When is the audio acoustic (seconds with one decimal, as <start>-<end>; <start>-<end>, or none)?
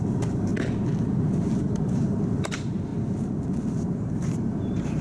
0.5-1.6; 2.9-3.9